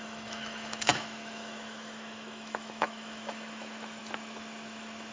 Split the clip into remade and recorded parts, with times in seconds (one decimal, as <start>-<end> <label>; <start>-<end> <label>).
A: 0.0-5.1 remade